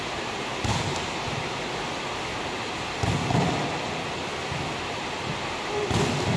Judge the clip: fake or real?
real